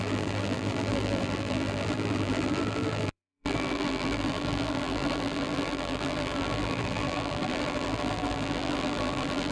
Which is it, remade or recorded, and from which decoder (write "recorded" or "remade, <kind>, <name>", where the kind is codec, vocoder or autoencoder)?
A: remade, vocoder, BigVGAN v2